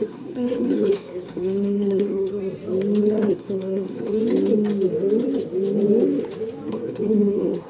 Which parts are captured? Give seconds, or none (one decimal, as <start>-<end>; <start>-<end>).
2.4-3.0; 4.2-6.7